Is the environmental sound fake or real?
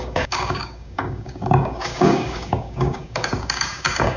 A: fake